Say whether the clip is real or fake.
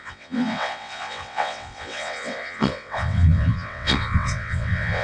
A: fake